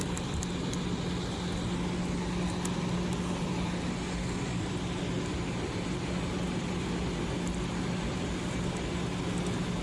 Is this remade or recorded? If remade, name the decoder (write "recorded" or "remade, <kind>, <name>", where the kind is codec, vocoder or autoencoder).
recorded